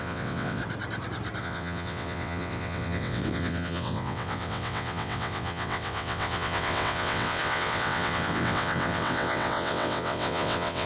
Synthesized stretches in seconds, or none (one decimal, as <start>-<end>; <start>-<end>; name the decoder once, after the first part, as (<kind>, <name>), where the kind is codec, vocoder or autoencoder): 0.0-0.6 (vocoder, WaveNeXt); 1.4-10.9